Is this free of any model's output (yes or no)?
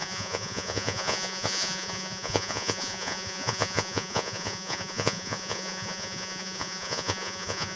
no